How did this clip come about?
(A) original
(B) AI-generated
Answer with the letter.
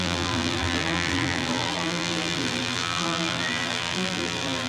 B